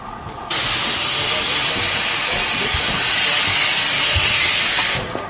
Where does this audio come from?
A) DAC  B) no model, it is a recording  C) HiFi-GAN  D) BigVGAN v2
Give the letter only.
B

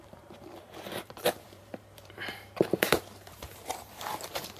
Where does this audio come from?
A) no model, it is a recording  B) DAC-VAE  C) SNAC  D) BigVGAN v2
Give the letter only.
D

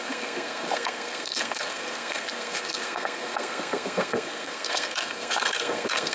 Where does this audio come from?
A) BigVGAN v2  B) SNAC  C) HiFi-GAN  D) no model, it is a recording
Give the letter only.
B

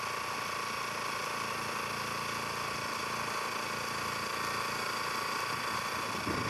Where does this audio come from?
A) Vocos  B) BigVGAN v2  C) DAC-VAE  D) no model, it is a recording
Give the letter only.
D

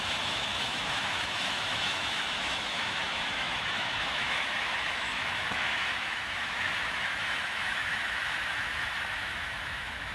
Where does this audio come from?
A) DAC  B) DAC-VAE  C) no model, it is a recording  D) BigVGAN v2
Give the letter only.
B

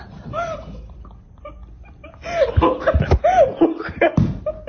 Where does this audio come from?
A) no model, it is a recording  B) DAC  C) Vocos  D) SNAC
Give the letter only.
A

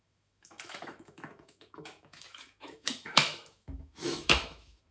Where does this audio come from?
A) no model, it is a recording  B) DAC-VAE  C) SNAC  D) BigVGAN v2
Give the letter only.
B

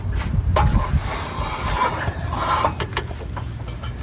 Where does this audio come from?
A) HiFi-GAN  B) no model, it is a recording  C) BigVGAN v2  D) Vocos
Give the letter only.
B